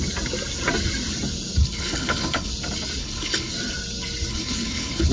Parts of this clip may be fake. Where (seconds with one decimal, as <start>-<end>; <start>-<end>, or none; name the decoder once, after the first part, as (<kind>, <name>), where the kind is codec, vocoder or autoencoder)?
1.6-2.5 (codec, HILCodec); 3.0-3.5; 4.3-5.1

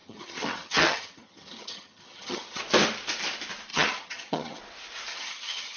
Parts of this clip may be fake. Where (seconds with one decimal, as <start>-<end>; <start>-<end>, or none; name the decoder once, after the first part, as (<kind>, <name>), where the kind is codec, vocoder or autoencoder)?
0.0-2.6 (vocoder, HiFi-GAN); 3.7-4.6; 5.1-5.8